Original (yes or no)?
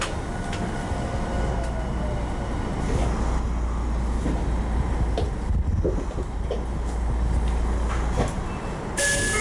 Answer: yes